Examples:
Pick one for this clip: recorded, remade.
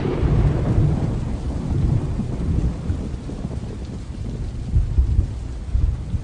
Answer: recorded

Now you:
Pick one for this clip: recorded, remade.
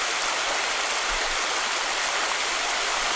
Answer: recorded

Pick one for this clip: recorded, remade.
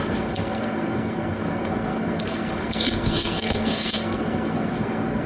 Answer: remade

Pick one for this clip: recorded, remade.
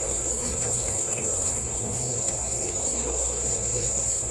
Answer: remade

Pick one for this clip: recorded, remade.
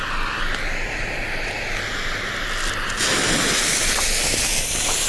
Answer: recorded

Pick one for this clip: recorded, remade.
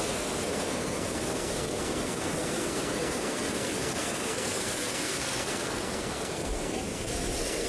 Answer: remade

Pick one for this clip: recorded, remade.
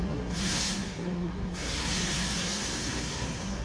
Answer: remade